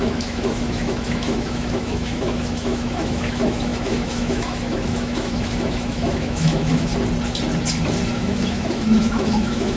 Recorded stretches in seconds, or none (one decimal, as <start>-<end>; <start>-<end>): 6.9-8.1